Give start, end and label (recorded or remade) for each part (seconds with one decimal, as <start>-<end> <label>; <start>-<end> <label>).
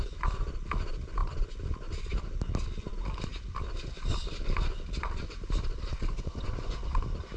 0.0-5.9 recorded; 5.9-6.9 remade; 6.9-7.4 recorded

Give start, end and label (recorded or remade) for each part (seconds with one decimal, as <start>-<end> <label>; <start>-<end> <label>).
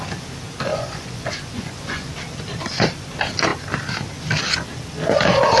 0.0-0.7 recorded; 0.7-2.1 remade; 2.1-5.6 recorded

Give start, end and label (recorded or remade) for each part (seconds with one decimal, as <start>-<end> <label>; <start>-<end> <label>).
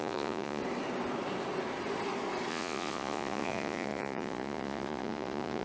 0.0-0.6 remade; 0.6-2.5 recorded; 2.5-5.6 remade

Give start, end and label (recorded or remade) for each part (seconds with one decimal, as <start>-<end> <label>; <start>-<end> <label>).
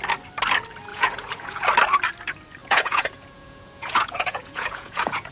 0.0-0.9 recorded; 0.9-1.6 remade; 1.6-2.6 recorded; 2.6-5.3 remade